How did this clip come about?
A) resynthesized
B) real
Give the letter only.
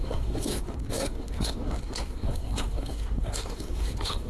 A